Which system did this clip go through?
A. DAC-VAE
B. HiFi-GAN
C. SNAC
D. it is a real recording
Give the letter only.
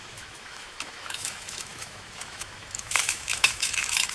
A